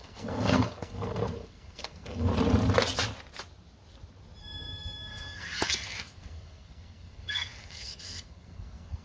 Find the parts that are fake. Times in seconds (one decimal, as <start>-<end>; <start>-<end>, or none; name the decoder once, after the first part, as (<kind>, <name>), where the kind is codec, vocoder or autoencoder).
0.0-2.3 (codec, SNAC); 4.4-9.0